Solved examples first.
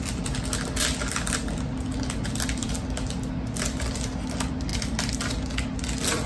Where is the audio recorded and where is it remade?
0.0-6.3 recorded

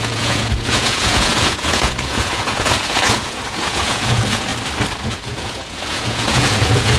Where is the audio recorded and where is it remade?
0.0-4.5 remade; 4.5-5.0 recorded; 5.0-7.0 remade

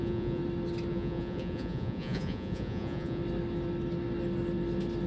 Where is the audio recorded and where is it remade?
0.0-0.4 remade; 0.4-0.9 recorded; 0.9-3.2 remade; 3.2-5.1 recorded

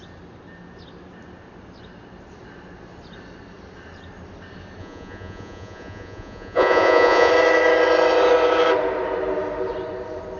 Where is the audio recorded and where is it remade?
0.0-4.8 recorded; 4.8-7.3 remade; 7.3-10.4 recorded